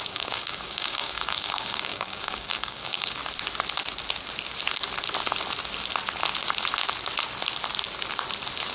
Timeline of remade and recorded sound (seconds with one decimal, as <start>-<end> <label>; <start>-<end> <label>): 0.0-3.2 remade; 3.2-8.7 recorded